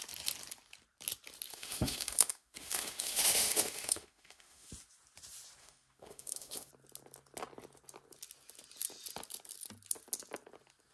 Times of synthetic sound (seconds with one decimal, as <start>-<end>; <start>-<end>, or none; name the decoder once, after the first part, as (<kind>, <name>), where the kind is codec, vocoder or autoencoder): 1.5-4.7 (autoencoder, DAC-VAE); 5.6-6.7